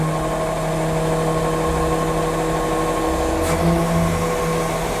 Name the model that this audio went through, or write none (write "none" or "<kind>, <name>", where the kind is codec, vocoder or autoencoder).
none